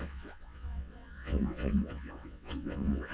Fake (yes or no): yes